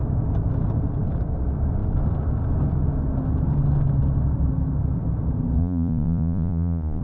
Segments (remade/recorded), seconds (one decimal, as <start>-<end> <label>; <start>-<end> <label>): 0.0-5.6 recorded; 5.6-7.0 remade